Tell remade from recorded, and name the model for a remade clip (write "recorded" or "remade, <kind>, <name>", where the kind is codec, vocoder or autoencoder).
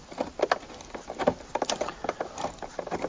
recorded